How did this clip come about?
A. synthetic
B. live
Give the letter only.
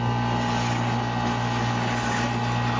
B